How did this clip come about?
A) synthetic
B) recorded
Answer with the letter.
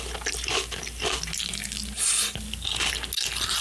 B